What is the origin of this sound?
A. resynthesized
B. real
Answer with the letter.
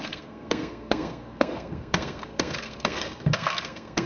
A